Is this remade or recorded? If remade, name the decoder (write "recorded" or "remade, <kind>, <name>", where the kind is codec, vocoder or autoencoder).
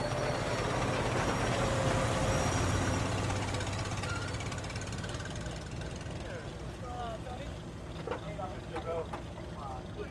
recorded